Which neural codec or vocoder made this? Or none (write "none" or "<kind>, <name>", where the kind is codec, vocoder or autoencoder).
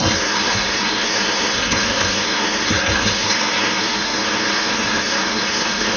codec, SNAC